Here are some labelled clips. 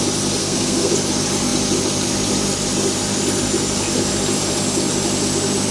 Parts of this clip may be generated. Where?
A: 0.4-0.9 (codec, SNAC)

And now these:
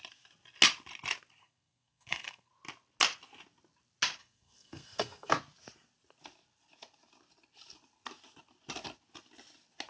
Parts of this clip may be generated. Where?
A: 1.4-2.5 (codec, SNAC); 4.2-5.3

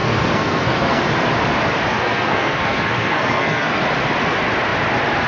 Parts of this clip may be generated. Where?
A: 0.0-1.0 (codec, SNAC); 1.9-3.8

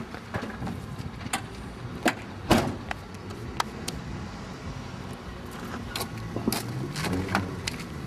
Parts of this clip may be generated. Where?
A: none

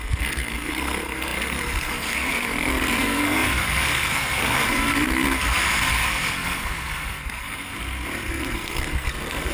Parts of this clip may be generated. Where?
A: 0.0-7.7 (codec, SNAC); 8.3-9.5

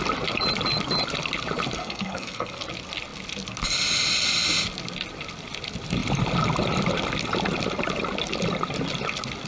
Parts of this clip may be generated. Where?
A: 1.8-2.6 (codec, SNAC)